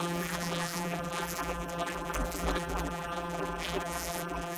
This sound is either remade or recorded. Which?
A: remade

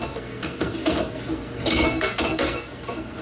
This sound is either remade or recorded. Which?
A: remade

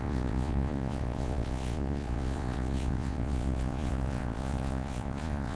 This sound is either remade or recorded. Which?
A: remade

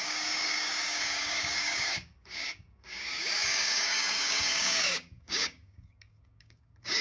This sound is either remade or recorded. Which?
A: remade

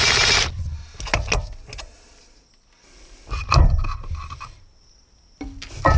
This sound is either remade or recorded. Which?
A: recorded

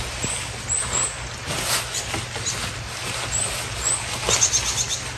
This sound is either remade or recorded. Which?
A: recorded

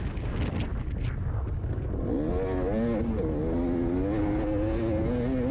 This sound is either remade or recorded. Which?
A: recorded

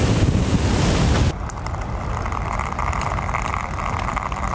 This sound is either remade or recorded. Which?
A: recorded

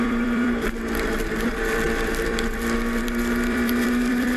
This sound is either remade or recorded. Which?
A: remade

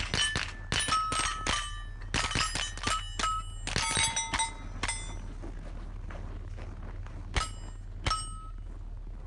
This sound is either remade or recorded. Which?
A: recorded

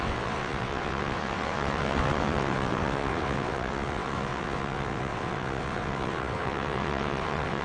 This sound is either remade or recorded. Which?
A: remade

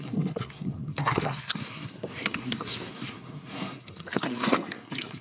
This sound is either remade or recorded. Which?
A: remade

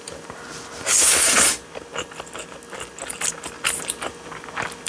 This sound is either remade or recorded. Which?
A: recorded